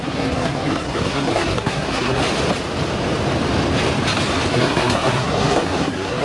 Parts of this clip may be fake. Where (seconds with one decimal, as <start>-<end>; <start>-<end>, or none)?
0.0-2.2; 4.5-6.2